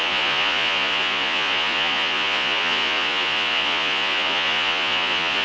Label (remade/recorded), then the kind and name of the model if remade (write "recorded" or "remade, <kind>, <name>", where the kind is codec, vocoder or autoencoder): remade, vocoder, Vocos